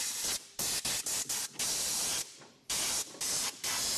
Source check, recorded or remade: remade